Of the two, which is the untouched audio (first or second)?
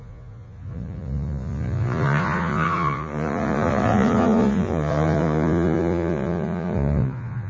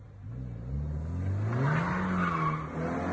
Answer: second